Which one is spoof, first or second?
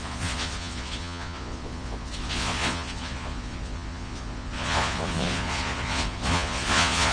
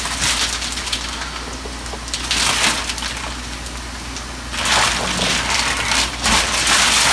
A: first